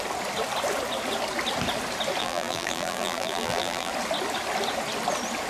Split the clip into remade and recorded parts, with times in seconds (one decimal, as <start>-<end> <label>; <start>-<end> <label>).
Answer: 0.0-2.2 recorded; 2.2-3.9 remade; 3.9-5.5 recorded